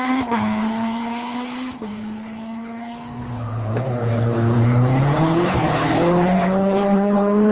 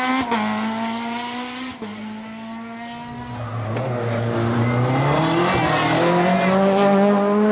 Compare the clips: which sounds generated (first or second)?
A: first